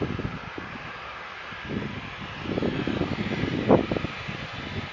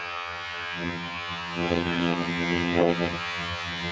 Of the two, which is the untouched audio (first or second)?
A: first